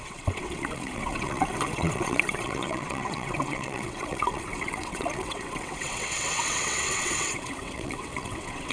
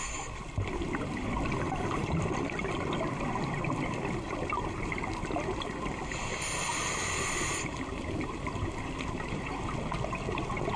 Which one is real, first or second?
second